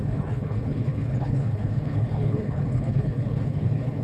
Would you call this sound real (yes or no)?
no